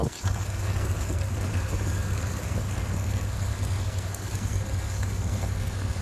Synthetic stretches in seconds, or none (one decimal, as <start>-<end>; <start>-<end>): 0.0-6.0